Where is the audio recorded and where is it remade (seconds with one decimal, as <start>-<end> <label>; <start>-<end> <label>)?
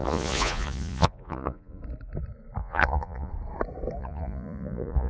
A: 0.0-1.8 remade; 1.8-2.6 recorded; 2.6-3.3 remade; 3.3-4.0 recorded; 4.0-5.1 remade